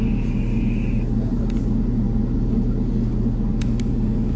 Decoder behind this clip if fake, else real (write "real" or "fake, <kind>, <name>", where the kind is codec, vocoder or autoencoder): real